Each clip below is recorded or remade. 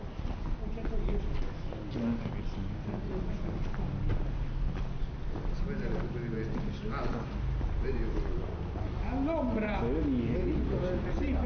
recorded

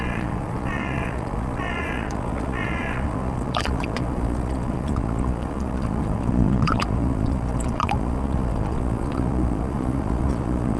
remade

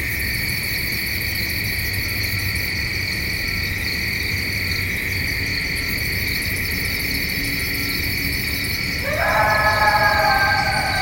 recorded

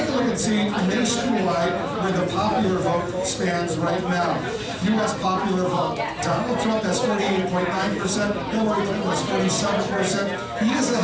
recorded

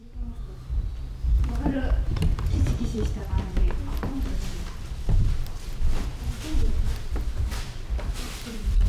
remade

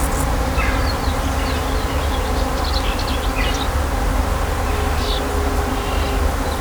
recorded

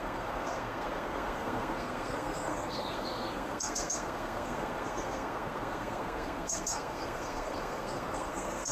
remade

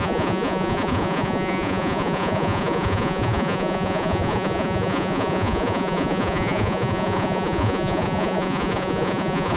remade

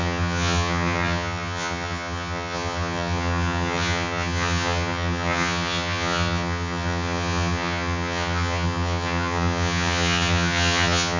remade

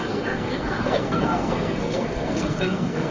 remade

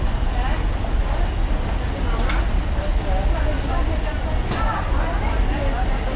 recorded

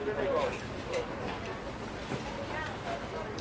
recorded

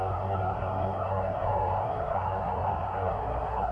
remade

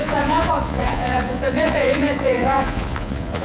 remade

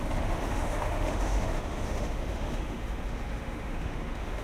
remade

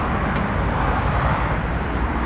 recorded